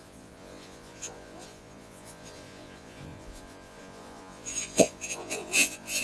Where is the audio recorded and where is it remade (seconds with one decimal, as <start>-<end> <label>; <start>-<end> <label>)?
0.0-6.0 remade